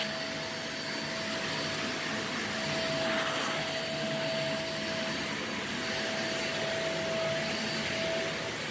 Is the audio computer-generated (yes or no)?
no